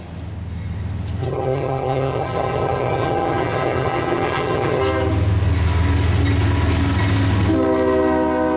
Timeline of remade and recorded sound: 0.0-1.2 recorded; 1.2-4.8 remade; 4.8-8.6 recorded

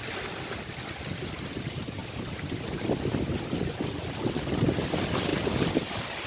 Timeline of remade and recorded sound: 0.0-5.3 recorded; 5.3-6.3 remade

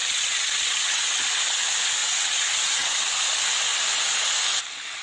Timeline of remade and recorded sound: 0.0-1.2 remade; 1.2-2.0 recorded; 2.0-3.2 remade; 3.2-5.0 recorded